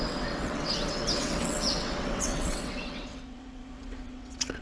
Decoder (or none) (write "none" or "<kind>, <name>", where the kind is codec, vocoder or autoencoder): vocoder, WaveNeXt